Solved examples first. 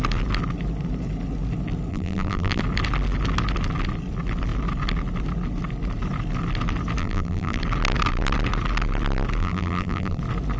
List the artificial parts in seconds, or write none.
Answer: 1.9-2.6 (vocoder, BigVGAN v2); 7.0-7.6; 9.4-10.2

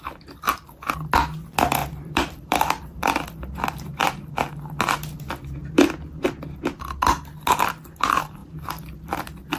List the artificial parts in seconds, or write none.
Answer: 1.8-4.3 (vocoder, BigVGAN v2); 5.6-6.6; 8.4-9.6